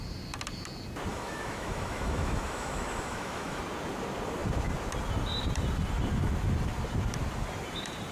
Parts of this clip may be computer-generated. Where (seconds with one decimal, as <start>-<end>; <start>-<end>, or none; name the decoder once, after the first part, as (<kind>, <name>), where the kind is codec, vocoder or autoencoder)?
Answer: 1.1-3.6 (autoencoder, DAC-VAE)

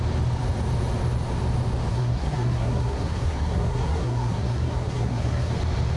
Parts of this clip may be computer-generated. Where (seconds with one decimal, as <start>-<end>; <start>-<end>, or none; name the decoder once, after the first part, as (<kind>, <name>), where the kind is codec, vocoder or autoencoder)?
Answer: 1.9-5.5 (codec, SNAC)

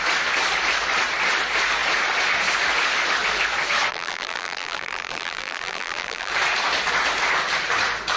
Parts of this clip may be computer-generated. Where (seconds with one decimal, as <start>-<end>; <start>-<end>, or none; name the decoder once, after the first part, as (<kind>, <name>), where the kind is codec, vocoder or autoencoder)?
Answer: 3.9-6.3 (vocoder, BigVGAN v2)

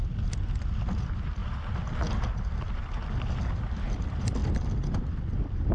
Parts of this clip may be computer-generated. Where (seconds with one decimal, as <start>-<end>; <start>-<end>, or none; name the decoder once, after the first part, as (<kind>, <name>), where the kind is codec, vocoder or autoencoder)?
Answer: none

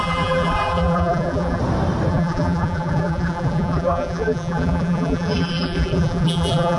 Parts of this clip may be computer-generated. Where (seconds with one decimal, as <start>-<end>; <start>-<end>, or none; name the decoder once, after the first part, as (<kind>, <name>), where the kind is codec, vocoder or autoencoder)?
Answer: 0.0-1.6 (vocoder, BigVGAN v2); 2.1-6.8

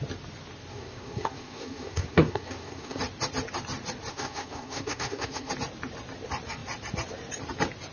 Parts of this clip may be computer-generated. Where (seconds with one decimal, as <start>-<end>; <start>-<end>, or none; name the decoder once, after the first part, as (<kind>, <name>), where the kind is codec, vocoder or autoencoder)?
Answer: 0.7-3.0 (codec, SNAC); 4.1-5.5

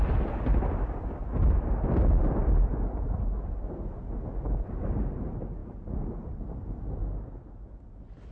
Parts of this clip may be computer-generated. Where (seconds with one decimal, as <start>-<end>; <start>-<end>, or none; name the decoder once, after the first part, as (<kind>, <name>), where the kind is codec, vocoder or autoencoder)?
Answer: none